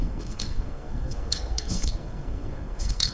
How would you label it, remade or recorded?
remade